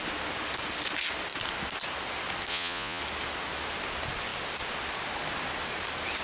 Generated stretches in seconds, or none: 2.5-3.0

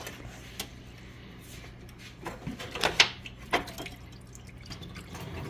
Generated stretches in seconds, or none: none

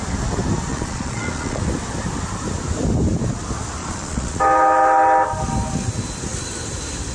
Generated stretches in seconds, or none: 0.7-1.6; 3.8-4.4

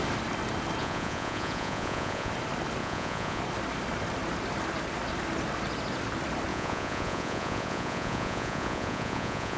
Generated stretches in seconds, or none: 0.8-2.3; 2.8-3.4; 6.5-9.6

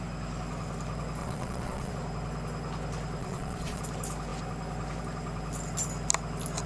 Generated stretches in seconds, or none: 1.2-1.9; 3.2-3.8

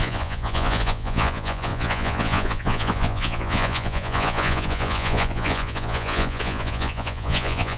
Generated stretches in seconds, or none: 0.0-7.8

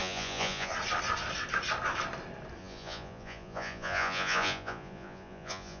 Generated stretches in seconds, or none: 0.0-0.7; 2.6-5.8

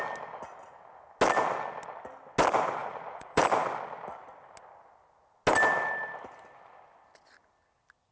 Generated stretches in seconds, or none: 2.8-3.4